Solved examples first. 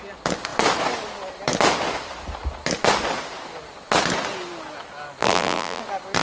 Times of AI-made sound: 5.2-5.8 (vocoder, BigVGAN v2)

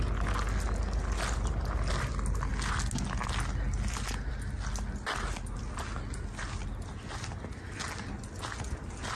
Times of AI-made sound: none

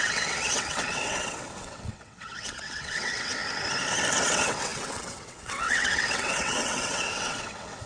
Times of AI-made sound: 0.0-3.4 (vocoder, WaveNeXt); 4.3-7.9